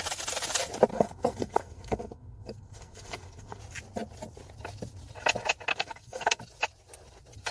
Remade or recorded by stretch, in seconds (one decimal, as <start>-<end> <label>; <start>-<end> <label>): 0.0-0.9 recorded; 0.9-3.6 remade; 3.6-5.7 recorded; 5.7-6.4 remade; 6.4-7.5 recorded